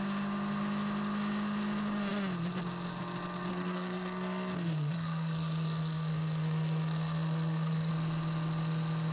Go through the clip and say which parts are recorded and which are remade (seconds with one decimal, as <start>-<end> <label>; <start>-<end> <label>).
0.0-3.5 recorded; 3.5-7.9 remade; 7.9-9.1 recorded